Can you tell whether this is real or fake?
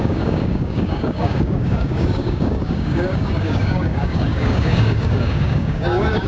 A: fake